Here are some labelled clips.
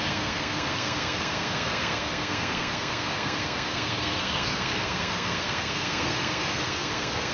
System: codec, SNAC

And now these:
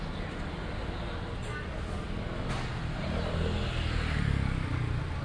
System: none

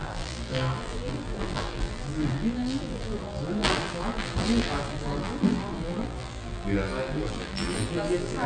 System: vocoder, BigVGAN v2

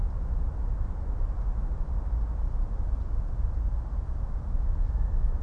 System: none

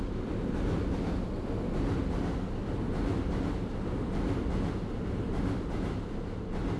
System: none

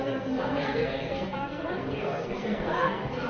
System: codec, SNAC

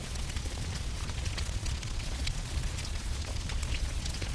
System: vocoder, Vocos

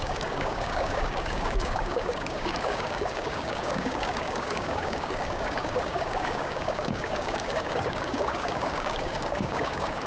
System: codec, DAC